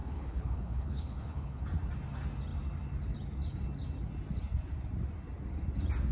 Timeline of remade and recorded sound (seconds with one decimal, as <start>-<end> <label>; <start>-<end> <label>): 0.0-1.6 remade; 1.6-6.1 recorded